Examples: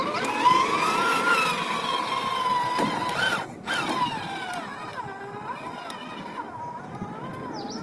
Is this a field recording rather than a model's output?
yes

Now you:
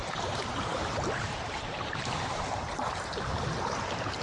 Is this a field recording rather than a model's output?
no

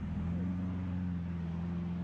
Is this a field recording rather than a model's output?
yes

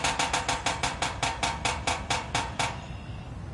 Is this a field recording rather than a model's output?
no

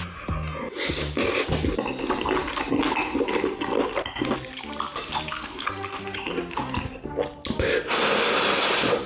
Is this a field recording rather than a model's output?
yes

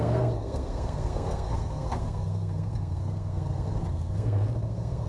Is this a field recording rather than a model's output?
no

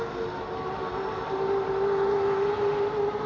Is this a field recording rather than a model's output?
yes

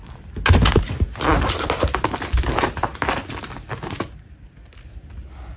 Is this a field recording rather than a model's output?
yes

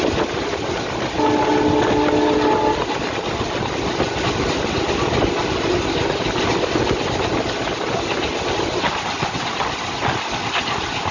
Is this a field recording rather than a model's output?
yes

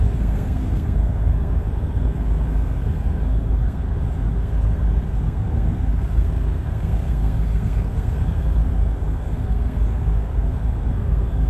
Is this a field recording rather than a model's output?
no